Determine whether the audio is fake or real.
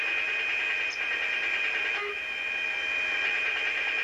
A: real